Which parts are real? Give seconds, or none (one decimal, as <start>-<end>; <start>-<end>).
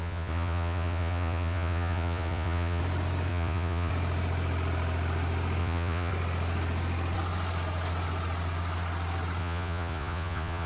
2.8-3.3; 3.9-5.6; 6.1-9.4